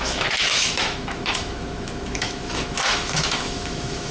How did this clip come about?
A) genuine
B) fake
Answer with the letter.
B